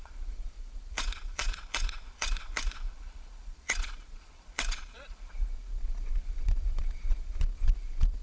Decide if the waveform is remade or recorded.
remade